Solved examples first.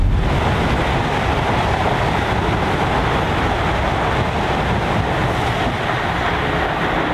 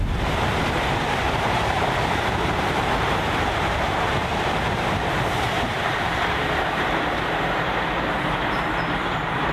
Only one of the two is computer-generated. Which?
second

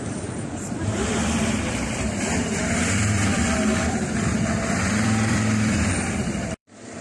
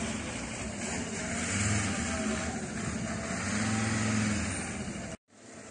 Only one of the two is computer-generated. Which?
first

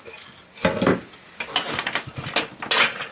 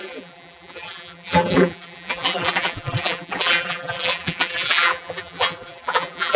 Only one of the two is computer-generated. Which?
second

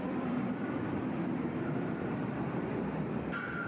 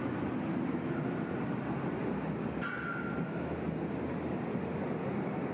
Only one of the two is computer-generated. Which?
first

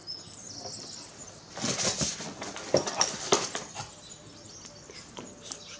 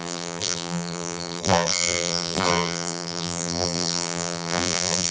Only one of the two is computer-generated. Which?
second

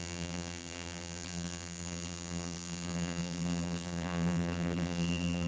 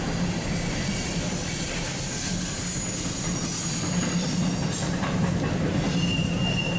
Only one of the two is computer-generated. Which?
first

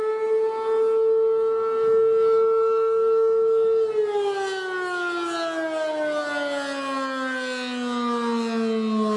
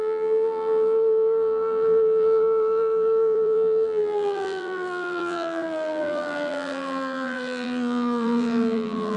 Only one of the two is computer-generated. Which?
second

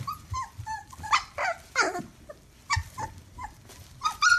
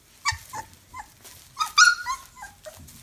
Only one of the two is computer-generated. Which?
first